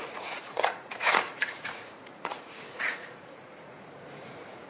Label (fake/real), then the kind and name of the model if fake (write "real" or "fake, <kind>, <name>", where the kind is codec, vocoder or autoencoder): fake, vocoder, Vocos